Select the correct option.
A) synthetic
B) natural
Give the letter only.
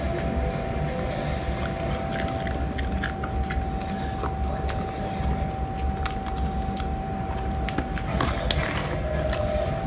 B